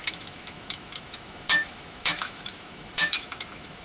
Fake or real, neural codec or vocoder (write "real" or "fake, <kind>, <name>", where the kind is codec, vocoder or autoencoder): fake, autoencoder, DAC-VAE